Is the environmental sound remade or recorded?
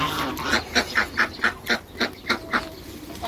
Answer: recorded